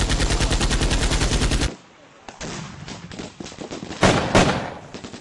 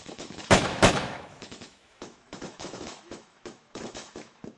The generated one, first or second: second